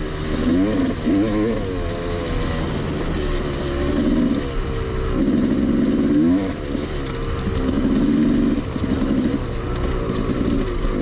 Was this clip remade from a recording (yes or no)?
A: no